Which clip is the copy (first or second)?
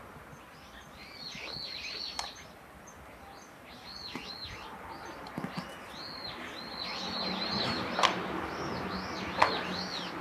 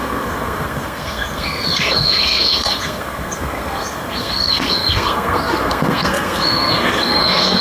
second